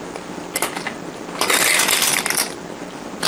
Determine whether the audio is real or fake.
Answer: real